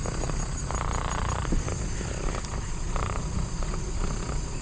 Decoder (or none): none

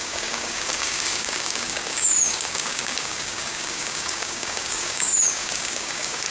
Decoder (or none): codec, DAC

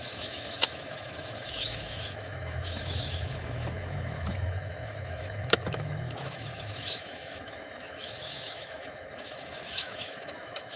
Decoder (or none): autoencoder, DAC-VAE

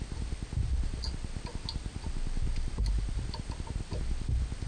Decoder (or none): none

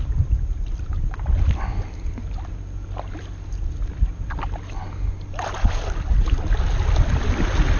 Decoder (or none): none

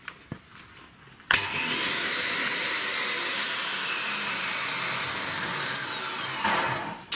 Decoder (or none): none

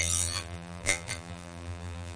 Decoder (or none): vocoder, BigVGAN v2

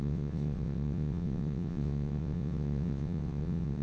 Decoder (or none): vocoder, WaveNeXt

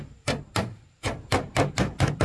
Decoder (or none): vocoder, BigVGAN v2